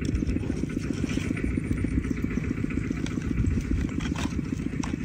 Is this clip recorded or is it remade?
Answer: recorded